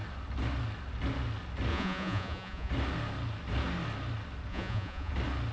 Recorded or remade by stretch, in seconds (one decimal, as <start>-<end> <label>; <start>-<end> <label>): 0.0-1.7 recorded; 1.7-2.7 remade; 2.7-4.5 recorded; 4.5-5.1 remade; 5.1-5.5 recorded

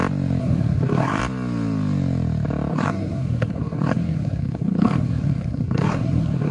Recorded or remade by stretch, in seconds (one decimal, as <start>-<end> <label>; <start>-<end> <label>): 0.0-0.4 recorded; 0.4-1.2 remade; 1.2-2.7 recorded; 2.7-6.5 remade